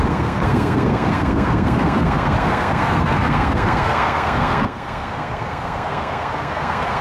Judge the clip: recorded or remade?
remade